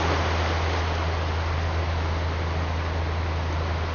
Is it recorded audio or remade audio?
recorded